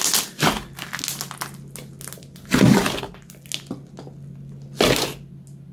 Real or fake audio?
real